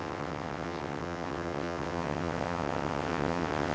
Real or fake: fake